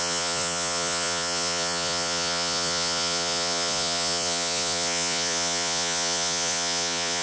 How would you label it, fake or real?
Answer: fake